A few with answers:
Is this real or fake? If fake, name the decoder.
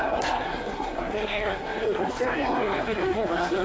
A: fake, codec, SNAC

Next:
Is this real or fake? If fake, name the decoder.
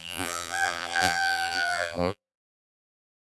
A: fake, vocoder, BigVGAN v2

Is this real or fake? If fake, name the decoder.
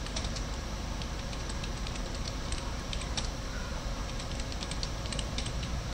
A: fake, vocoder, BigVGAN v2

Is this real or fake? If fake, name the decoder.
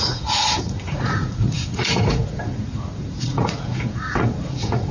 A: fake, vocoder, Vocos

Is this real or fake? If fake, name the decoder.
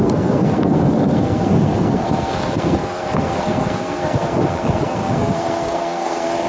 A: fake, codec, SNAC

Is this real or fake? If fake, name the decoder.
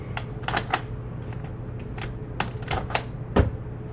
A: real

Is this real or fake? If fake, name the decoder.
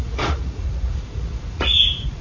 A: fake, vocoder, Vocos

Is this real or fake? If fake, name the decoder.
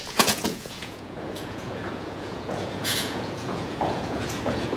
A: fake, vocoder, Vocos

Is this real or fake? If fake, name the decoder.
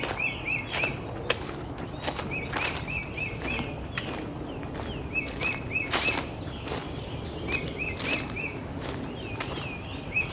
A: real